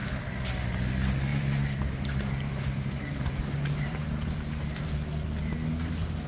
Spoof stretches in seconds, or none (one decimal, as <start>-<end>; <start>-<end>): 1.3-5.1